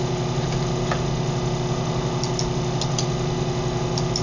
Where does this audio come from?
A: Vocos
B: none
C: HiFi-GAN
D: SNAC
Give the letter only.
B